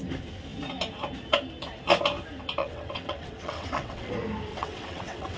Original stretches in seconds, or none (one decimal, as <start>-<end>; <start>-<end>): 0.0-2.6; 4.1-4.5